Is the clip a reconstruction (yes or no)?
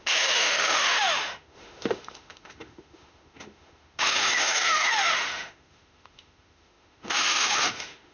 yes